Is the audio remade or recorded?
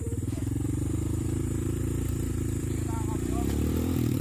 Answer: remade